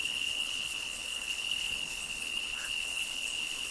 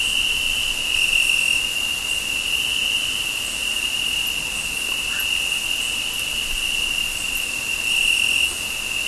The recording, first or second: second